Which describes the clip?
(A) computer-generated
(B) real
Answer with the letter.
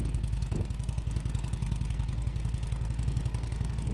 A